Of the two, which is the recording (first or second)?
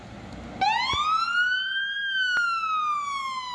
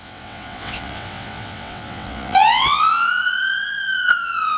first